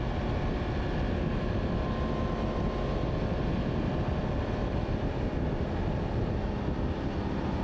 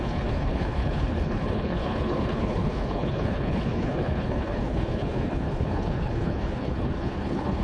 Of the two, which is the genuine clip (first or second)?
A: first